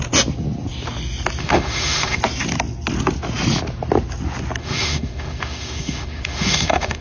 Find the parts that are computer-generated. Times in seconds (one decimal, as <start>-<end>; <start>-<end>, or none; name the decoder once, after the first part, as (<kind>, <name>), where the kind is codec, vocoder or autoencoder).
1.4-2.2 (autoencoder, DAC-VAE); 4.6-7.0